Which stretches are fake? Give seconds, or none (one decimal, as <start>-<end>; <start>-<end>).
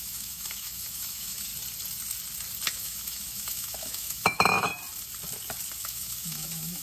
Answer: 0.0-1.5; 2.7-4.7; 5.8-6.8